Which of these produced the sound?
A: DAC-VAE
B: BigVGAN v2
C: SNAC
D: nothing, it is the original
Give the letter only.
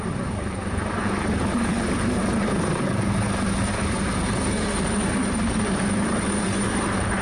B